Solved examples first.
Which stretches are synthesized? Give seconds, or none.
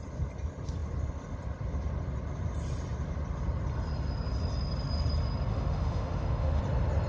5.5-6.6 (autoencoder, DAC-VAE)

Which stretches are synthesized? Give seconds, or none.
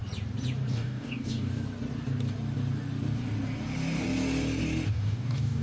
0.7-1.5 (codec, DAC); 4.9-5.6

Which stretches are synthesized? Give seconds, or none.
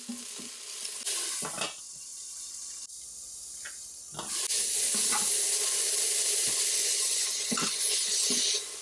6.8-8.4 (vocoder, Vocos)